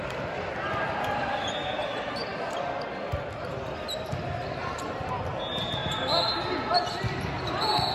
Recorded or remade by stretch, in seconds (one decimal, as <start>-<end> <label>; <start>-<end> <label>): 0.0-7.9 recorded